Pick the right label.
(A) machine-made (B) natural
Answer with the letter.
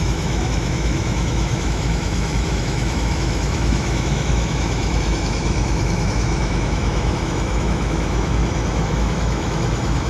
A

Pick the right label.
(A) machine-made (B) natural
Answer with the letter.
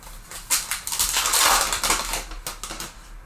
B